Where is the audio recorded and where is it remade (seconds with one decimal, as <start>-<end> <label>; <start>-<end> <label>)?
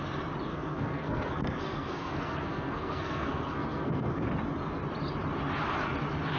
0.0-0.5 recorded; 0.5-4.3 remade; 4.3-6.4 recorded